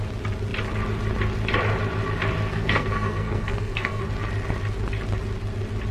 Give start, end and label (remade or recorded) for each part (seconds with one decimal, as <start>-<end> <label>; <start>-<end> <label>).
0.0-2.5 recorded; 2.5-4.0 remade; 4.0-5.9 recorded

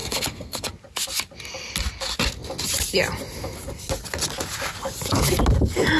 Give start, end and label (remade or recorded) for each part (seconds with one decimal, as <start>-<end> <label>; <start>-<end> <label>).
0.0-0.7 remade; 0.7-6.0 recorded